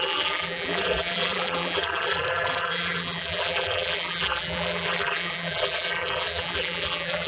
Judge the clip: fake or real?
fake